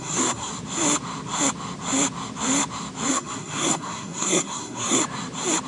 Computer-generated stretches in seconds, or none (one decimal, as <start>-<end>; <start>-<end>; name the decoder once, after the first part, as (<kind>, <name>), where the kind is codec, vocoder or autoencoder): 0.0-0.5 (codec, SNAC); 3.1-5.0